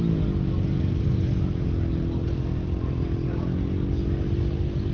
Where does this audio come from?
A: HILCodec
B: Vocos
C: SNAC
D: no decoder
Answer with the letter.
D